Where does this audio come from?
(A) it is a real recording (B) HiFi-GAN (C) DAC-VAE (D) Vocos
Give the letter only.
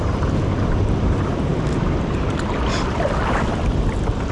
A